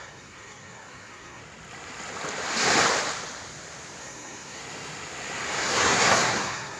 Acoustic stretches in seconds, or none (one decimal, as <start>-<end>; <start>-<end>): 1.4-4.0; 4.6-5.5